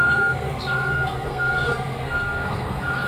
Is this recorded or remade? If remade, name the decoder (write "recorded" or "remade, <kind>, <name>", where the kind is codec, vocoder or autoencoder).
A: remade, codec, SNAC